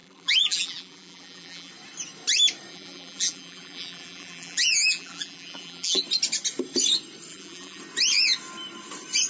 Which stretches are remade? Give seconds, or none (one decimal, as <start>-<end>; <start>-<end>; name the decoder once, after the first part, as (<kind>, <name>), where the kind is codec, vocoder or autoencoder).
0.0-1.7 (vocoder, BigVGAN v2); 2.7-6.0; 7.3-7.8